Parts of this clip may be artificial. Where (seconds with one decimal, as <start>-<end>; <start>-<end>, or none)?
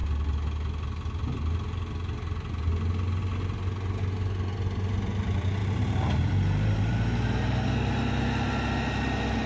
5.6-6.9